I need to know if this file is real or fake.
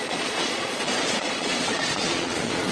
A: fake